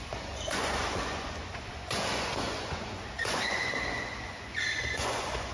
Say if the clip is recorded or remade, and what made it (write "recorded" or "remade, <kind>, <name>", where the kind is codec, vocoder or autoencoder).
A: remade, vocoder, Vocos